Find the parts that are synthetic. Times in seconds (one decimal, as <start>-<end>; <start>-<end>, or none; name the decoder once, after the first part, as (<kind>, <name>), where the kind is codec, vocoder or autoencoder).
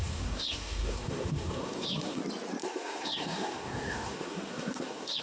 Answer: 0.0-2.2 (codec, SNAC); 2.6-5.2